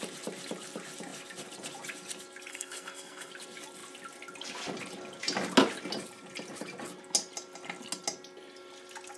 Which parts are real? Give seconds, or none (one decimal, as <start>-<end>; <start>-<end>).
0.0-2.5; 3.3-9.2